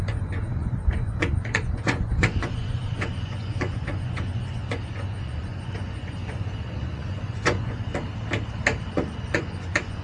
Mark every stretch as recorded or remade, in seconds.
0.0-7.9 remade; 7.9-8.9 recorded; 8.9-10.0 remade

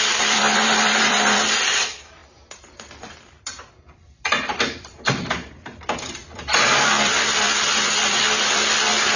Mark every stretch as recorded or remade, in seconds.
0.0-9.2 remade

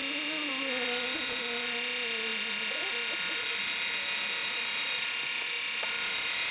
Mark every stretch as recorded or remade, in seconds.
0.0-4.4 recorded; 4.4-6.5 remade

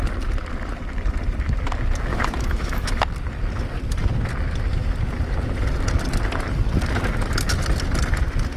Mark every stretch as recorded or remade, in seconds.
0.0-2.1 recorded; 2.1-3.0 remade; 3.0-8.6 recorded

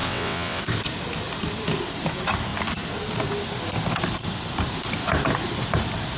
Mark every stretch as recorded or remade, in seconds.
0.0-0.6 remade; 0.6-6.2 recorded